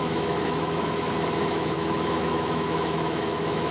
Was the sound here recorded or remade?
remade